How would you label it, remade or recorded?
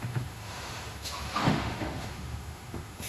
remade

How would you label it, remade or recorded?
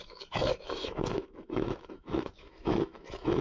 remade